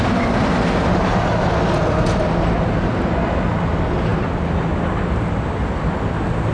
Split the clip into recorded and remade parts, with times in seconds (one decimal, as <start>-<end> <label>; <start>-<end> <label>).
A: 0.0-6.5 recorded